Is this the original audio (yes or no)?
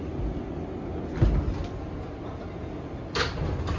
yes